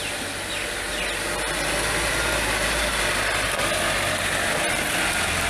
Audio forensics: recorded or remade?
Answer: recorded